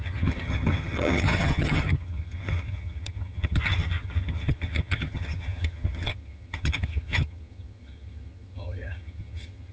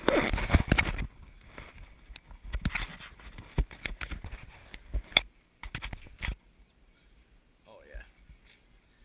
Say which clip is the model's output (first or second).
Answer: first